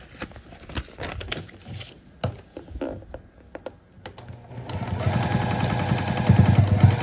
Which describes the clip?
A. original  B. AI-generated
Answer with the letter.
A